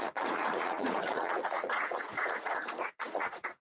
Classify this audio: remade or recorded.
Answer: remade